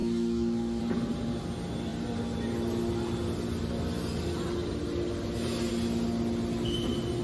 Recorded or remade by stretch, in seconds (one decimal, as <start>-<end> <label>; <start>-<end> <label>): 0.0-0.8 remade; 0.8-7.2 recorded